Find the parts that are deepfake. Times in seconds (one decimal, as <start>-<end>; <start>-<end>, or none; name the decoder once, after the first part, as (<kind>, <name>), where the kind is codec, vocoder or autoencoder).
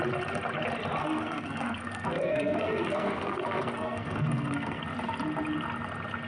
1.0-4.8 (codec, SNAC)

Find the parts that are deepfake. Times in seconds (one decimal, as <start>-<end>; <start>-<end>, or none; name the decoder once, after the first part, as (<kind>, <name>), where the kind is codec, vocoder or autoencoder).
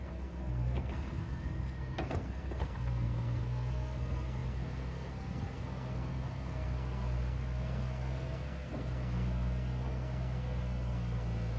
0.0-11.6 (codec, SNAC)